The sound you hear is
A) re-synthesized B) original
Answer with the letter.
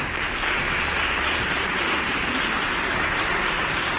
A